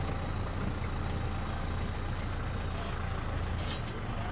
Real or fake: real